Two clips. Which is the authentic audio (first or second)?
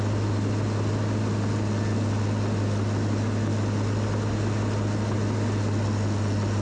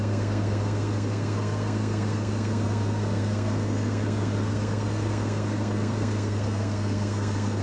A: first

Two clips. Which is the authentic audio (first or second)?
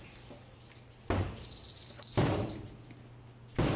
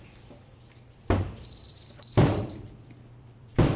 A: first